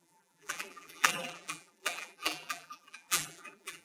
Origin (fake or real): fake